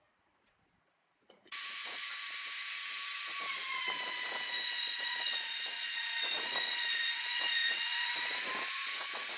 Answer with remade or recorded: remade